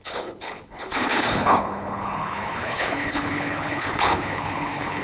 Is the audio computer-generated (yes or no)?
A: yes